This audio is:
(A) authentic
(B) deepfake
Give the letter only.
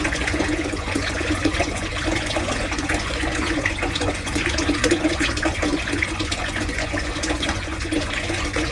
B